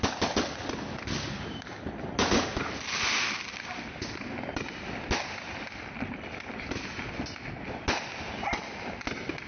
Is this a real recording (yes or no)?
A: yes